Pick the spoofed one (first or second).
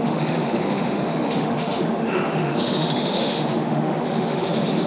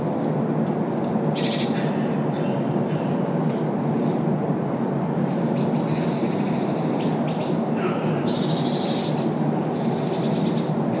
first